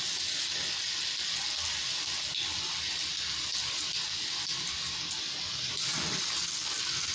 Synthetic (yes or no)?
no